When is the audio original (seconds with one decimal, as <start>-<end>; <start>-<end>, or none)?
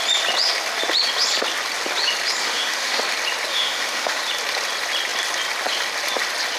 0.0-2.4; 3.0-3.5; 4.2-6.6